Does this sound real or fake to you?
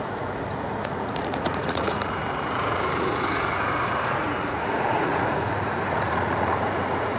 fake